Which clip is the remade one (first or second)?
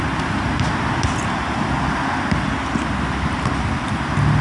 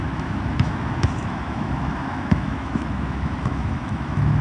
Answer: second